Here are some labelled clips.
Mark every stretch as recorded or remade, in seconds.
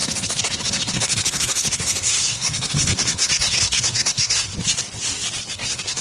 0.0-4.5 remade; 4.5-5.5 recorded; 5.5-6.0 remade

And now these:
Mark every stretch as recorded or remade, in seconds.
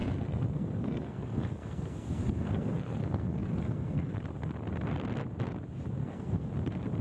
0.0-4.2 remade; 4.2-6.0 recorded; 6.0-6.5 remade; 6.5-7.0 recorded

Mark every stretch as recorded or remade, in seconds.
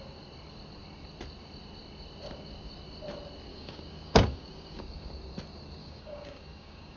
0.0-3.5 recorded; 3.5-5.1 remade; 5.1-5.8 recorded; 5.8-7.0 remade